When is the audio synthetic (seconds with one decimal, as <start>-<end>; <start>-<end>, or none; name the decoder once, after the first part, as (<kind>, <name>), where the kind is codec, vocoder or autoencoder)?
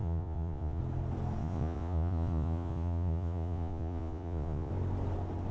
0.0-0.8 (vocoder, Vocos); 1.4-4.7